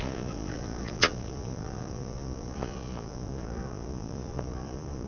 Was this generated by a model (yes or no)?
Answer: yes